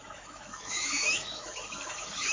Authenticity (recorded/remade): remade